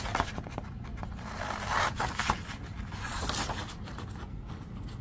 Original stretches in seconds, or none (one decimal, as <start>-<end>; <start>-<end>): 0.0-4.3